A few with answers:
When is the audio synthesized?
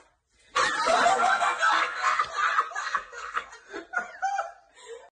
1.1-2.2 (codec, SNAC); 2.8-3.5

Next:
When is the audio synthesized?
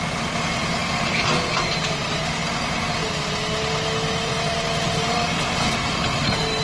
4.2-6.0 (vocoder, BigVGAN v2)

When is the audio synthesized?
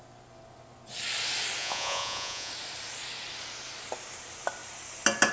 1.6-2.5 (vocoder, Vocos)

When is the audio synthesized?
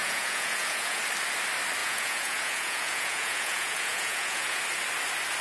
0.0-1.0 (vocoder, Vocos); 1.8-4.6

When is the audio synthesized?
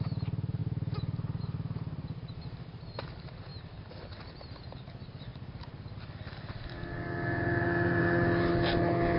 none